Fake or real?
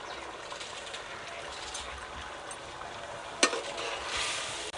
real